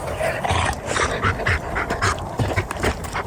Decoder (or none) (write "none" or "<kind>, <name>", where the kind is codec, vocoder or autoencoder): none